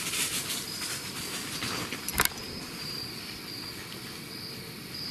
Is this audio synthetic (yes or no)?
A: no